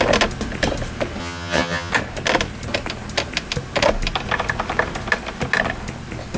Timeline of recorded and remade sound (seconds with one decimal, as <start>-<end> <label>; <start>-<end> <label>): 0.0-1.2 recorded; 1.2-1.9 remade; 1.9-6.4 recorded